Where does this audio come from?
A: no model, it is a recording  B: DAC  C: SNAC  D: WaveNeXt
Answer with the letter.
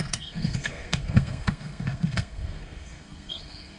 C